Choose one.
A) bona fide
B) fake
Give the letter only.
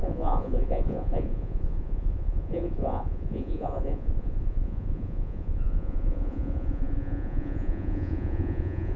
B